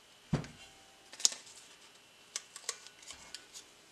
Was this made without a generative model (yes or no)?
yes